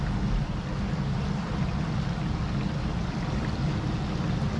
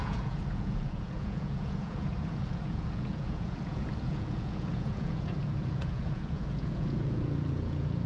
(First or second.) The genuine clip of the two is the first